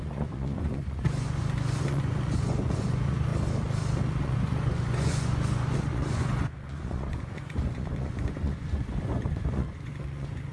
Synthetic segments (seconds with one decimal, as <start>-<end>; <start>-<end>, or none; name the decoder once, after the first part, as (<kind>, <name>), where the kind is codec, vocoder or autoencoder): 0.0-3.3 (vocoder, Vocos); 4.2-10.5